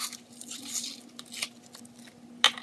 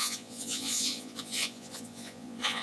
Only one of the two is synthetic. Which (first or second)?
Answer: second